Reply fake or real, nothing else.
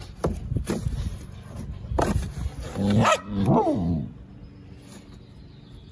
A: real